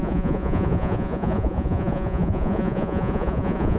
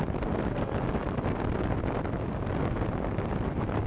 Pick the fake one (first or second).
first